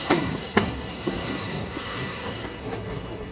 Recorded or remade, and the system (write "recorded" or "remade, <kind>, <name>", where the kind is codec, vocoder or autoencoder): remade, codec, SNAC